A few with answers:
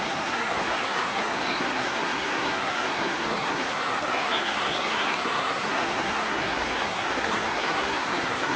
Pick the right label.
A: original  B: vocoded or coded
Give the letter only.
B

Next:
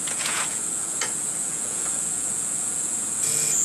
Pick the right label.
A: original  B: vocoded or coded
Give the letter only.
B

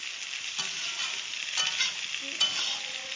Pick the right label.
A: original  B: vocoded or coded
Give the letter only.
A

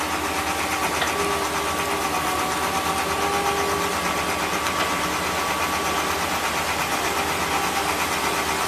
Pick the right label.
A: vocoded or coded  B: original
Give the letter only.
B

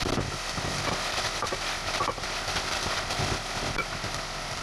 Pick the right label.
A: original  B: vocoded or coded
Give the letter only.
A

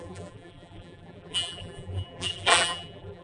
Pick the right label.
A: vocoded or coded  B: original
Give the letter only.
A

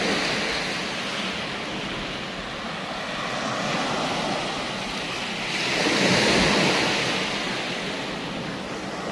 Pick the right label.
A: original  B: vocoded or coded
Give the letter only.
A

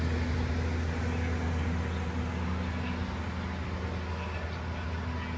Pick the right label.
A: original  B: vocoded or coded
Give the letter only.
A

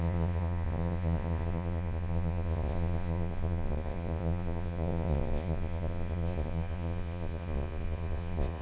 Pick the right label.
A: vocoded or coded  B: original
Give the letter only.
A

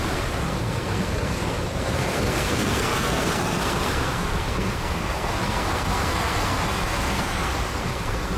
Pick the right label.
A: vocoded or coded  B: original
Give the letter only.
A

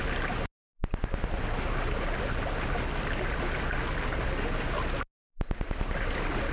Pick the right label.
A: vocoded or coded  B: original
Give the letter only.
B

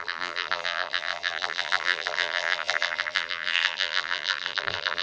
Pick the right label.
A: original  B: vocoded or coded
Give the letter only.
B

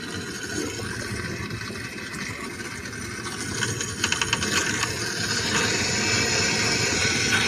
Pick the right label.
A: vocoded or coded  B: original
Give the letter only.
B